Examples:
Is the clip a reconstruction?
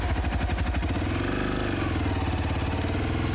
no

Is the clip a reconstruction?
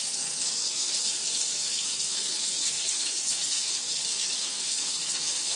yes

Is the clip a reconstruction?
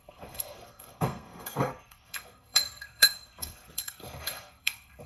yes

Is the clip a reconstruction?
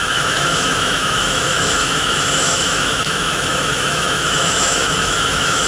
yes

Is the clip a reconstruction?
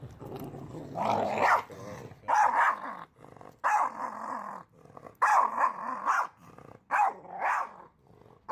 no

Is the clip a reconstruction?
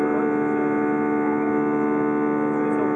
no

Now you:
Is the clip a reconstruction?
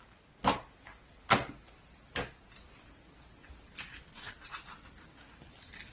no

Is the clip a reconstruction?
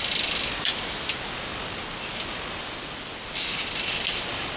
no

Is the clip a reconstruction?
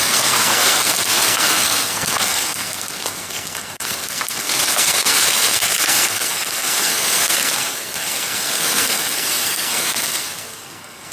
yes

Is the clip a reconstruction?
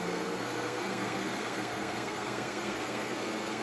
yes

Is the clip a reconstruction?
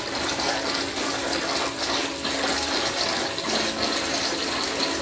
no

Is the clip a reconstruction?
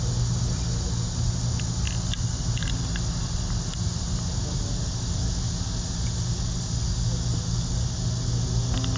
no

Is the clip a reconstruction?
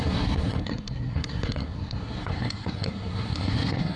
yes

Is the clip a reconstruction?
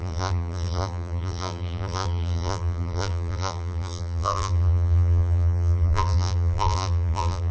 yes